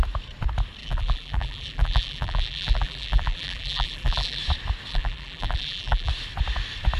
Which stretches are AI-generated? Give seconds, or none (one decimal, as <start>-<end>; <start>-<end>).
0.8-4.4; 4.9-6.1